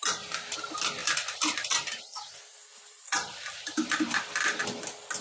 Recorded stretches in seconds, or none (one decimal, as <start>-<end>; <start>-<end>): 0.0-1.0; 1.7-2.7; 4.6-5.2